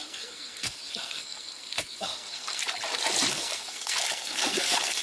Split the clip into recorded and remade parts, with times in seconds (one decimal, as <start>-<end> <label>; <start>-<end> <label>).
0.0-2.6 remade; 2.6-3.3 recorded; 3.3-5.0 remade